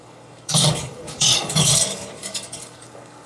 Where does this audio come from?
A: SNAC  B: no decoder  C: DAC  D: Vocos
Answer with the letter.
C